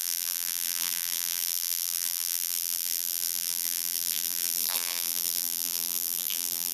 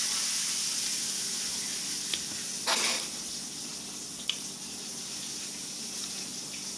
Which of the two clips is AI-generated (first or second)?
first